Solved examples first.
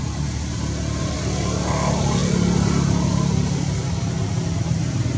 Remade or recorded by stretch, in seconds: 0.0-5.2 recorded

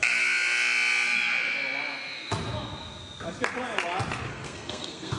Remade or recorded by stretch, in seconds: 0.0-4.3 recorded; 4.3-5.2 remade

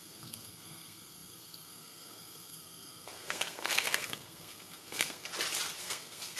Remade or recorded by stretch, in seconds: 0.0-5.3 remade; 5.3-5.8 recorded; 5.8-6.4 remade

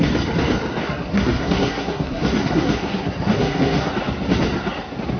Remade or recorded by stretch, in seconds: 0.0-0.8 recorded; 0.8-3.9 remade; 3.9-5.2 recorded

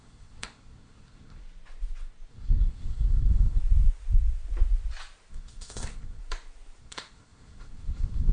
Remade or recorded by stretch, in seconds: 0.0-1.4 remade; 1.4-2.3 recorded; 2.3-3.6 remade; 3.6-5.3 recorded; 5.3-6.2 remade; 6.2-6.8 recorded; 6.8-8.3 remade